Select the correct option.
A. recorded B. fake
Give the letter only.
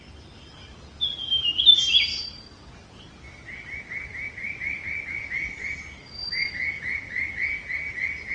A